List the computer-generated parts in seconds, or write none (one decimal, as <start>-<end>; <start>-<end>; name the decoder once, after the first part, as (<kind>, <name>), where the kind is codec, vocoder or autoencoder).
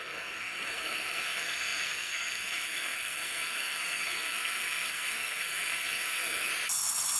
0.0-6.5 (codec, SNAC)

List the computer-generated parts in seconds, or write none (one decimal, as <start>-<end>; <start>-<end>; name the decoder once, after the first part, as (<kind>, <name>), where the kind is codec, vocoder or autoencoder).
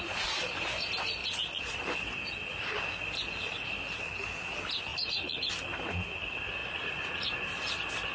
1.2-1.8 (vocoder, Vocos); 4.9-5.4; 6.6-7.4